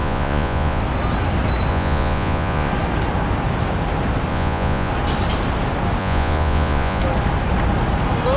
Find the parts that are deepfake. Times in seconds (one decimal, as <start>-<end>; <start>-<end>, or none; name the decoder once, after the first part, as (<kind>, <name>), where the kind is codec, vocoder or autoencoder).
0.0-0.8 (vocoder, Vocos); 1.7-2.7; 4.3-4.9; 6.0-7.0